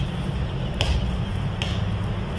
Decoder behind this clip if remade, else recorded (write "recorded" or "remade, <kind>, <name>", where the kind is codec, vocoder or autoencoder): recorded